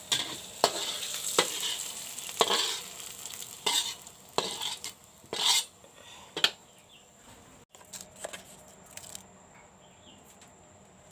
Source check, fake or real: real